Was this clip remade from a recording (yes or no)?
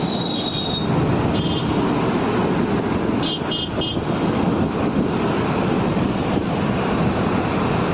no